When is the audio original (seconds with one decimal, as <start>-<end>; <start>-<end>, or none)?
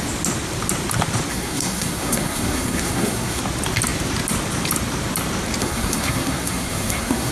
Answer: 0.0-1.3; 3.4-5.6